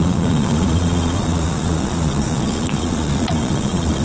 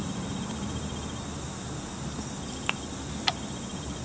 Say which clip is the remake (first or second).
first